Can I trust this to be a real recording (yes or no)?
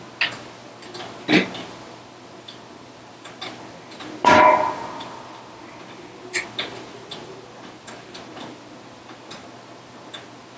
yes